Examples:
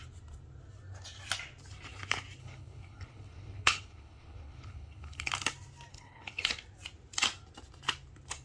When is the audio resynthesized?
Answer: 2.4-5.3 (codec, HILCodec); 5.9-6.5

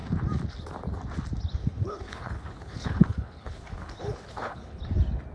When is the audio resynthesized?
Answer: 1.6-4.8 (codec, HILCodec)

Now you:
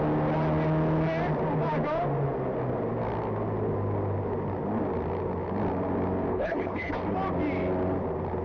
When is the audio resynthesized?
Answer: 6.3-6.9 (codec, HILCodec)

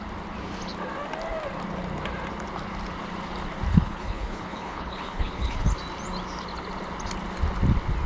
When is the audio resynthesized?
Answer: 3.7-5.7 (codec, HILCodec)

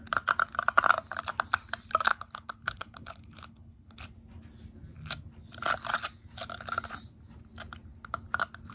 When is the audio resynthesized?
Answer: 2.1-4.0 (codec, HILCodec)